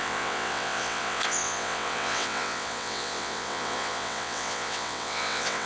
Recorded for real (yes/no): no